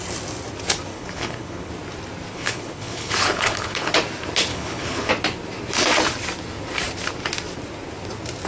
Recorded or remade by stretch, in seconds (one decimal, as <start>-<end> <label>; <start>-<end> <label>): 0.0-0.9 recorded; 0.9-1.7 remade; 1.7-2.3 recorded; 2.3-3.9 remade; 3.9-4.5 recorded; 4.5-5.1 remade; 5.1-8.5 recorded